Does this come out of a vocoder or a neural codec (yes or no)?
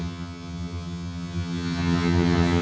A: yes